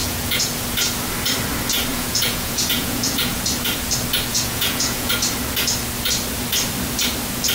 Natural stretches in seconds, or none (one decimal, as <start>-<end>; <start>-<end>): 0.6-1.9; 3.4-4.3; 5.1-7.5